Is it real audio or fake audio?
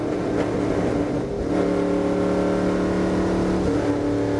real